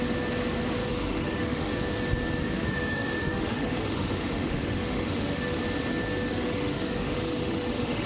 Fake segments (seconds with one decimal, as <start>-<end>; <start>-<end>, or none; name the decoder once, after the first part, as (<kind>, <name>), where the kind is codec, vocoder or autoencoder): 0.9-1.7 (autoencoder, DAC-VAE); 2.4-5.6; 6.3-8.1